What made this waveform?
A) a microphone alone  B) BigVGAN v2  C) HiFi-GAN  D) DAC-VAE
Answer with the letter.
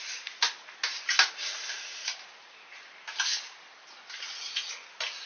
A